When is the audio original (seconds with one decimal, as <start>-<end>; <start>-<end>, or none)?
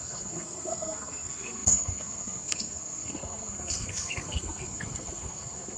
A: none